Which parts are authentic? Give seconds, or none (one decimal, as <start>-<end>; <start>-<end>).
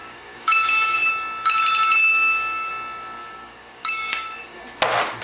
1.1-2.1; 2.7-3.2; 4.6-5.2